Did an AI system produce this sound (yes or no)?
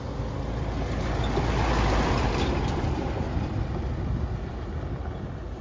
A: no